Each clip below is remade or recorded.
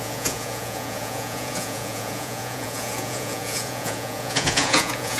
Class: remade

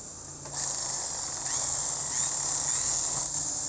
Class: recorded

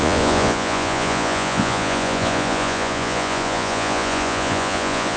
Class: remade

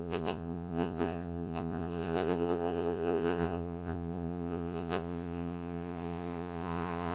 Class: remade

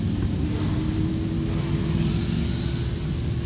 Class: recorded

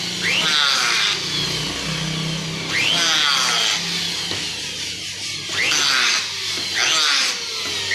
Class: recorded